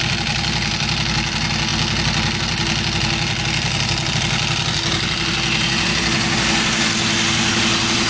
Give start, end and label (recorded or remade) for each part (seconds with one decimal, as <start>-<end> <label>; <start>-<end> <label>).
0.0-8.1 recorded